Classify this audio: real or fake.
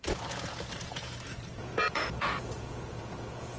fake